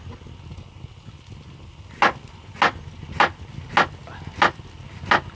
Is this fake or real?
real